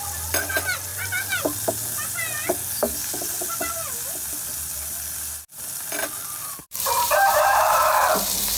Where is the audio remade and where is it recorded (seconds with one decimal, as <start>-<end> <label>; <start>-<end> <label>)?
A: 0.0-6.6 recorded; 6.6-8.0 remade; 8.0-8.6 recorded